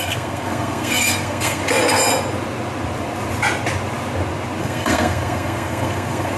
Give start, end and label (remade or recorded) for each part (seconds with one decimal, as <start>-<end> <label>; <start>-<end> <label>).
0.0-1.6 remade; 1.6-4.6 recorded; 4.6-6.4 remade

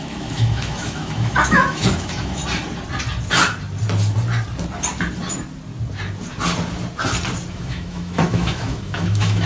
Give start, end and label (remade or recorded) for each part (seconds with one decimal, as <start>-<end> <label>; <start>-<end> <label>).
0.0-2.4 remade; 2.4-7.5 recorded; 7.5-9.5 remade